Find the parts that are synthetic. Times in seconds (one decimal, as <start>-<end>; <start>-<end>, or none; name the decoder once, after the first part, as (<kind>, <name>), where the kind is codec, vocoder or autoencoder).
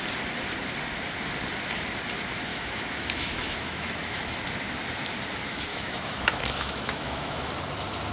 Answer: 2.5-4.2 (autoencoder, DAC-VAE); 5.7-7.5